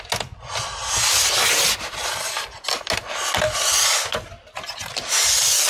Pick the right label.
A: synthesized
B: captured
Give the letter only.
B